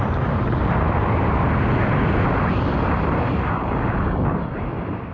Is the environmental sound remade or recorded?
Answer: recorded